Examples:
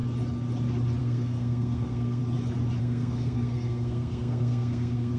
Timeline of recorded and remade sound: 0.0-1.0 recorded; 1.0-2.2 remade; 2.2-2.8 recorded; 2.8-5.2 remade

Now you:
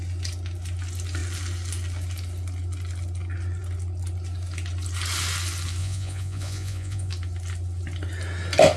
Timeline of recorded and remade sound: 0.0-5.8 recorded; 5.8-7.1 remade; 7.1-8.8 recorded

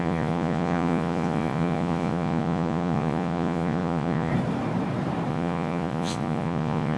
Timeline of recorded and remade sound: 0.0-4.3 remade; 4.3-5.3 recorded; 5.3-7.0 remade

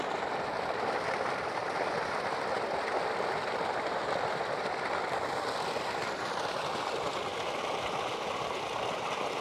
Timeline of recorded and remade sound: 0.0-9.4 recorded

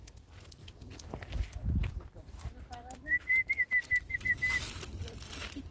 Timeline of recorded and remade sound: 0.0-1.8 recorded; 1.8-5.2 remade; 5.2-5.7 recorded

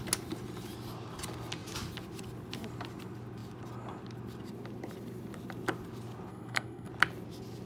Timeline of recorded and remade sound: 0.0-6.3 recorded; 6.3-6.9 remade; 6.9-7.7 recorded